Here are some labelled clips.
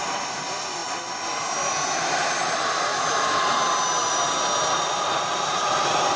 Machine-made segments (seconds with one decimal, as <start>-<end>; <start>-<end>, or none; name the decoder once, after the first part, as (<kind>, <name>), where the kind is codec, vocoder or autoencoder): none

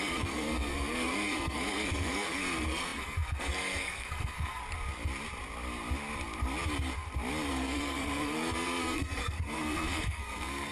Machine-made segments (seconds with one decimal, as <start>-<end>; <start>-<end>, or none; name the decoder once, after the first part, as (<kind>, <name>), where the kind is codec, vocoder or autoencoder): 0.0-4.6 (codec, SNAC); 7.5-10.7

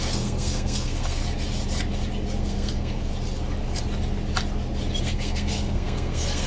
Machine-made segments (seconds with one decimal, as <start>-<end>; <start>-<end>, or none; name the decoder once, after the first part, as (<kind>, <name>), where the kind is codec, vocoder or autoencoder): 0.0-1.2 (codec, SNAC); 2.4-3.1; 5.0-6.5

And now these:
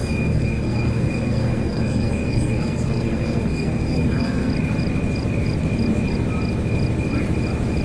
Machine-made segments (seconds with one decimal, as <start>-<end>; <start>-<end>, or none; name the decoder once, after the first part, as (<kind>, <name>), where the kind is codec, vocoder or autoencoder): 0.0-4.5 (codec, SNAC)

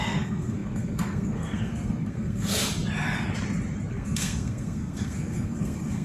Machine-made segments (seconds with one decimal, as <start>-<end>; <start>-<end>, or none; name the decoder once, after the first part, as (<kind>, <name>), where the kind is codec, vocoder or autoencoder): 0.0-2.6 (codec, SNAC); 3.9-6.0